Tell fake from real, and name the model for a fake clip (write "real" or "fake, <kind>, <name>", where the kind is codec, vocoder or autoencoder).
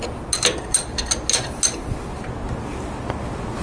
real